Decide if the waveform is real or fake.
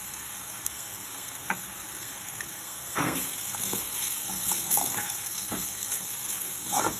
fake